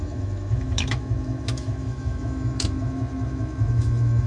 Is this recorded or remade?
remade